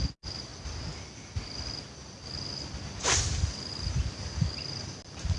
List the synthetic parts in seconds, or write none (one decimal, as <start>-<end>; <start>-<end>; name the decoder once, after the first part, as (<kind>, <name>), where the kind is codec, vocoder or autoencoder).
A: none

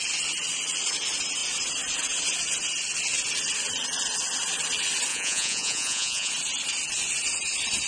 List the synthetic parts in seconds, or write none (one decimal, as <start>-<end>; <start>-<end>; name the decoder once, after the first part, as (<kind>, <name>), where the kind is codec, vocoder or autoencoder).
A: 5.1-6.3 (vocoder, Vocos)

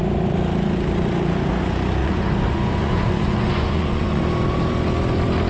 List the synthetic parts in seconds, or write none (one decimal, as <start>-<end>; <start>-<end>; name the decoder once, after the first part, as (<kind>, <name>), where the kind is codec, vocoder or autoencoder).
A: 2.0-4.2 (vocoder, Vocos)

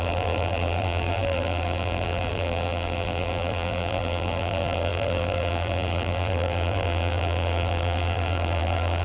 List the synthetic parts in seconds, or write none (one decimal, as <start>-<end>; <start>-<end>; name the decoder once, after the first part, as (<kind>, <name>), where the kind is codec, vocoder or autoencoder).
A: 0.0-9.0 (vocoder, BigVGAN v2)

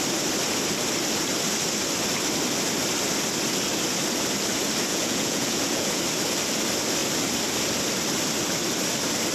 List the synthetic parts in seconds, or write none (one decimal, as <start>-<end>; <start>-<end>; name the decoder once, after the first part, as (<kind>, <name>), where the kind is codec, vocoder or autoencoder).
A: 4.9-6.0 (vocoder, Vocos)

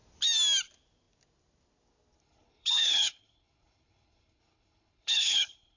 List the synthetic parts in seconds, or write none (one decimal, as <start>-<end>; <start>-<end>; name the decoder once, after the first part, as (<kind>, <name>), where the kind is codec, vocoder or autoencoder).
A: 2.2-5.8 (codec, HILCodec)

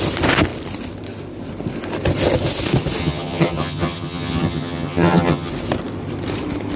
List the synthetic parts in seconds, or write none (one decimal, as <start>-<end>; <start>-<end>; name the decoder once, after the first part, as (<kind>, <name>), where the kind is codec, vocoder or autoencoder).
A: 3.0-5.5 (vocoder, HiFi-GAN)

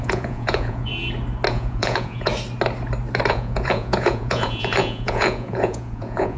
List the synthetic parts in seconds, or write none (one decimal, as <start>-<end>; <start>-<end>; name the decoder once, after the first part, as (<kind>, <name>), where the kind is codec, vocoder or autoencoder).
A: 0.0-0.9 (vocoder, Vocos); 1.5-2.3; 3.3-6.4